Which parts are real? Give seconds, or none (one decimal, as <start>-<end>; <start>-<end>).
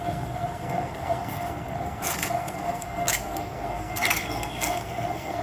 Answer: none